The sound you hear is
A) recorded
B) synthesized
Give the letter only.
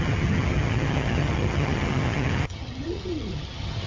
B